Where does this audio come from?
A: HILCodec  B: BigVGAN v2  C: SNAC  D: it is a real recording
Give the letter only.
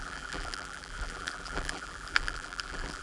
B